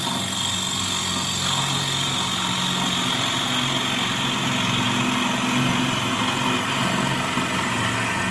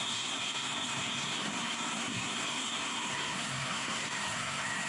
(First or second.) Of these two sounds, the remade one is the second